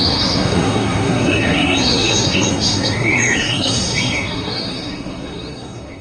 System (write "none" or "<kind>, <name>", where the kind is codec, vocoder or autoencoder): codec, SNAC